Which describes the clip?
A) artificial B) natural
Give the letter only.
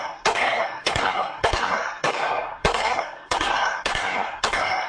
A